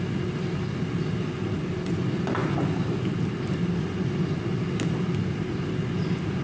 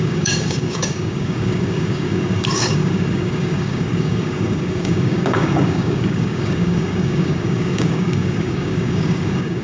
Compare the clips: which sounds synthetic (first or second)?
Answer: second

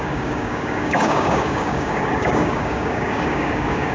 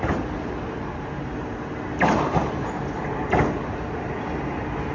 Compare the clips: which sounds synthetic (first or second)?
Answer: first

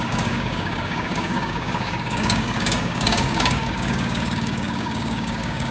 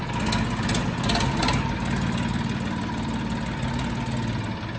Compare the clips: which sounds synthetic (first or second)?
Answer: first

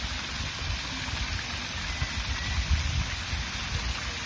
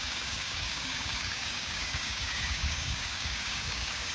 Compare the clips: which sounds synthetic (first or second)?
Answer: second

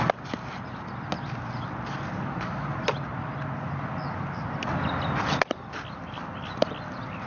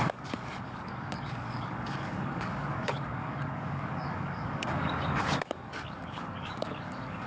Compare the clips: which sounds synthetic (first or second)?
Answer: second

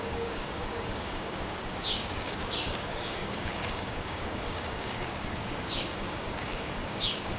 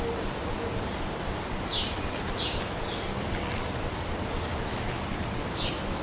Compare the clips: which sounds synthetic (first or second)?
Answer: first